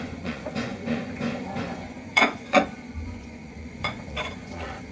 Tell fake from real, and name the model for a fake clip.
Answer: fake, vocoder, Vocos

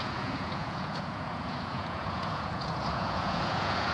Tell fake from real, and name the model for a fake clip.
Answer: fake, vocoder, Vocos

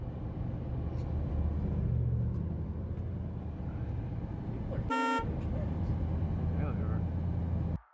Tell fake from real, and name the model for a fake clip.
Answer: real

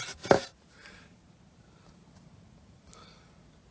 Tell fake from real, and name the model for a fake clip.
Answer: real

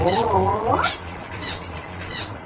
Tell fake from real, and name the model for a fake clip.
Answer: fake, vocoder, Vocos